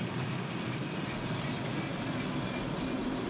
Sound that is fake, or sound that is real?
real